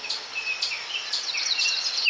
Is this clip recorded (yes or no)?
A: yes